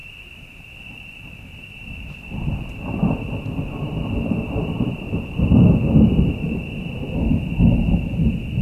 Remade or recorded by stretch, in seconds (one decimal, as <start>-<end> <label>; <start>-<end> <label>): 0.0-5.2 remade; 5.2-8.6 recorded